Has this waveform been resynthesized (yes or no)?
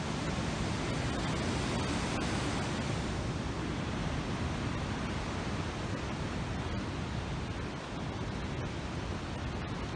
no